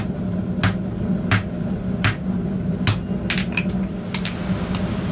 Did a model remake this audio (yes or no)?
no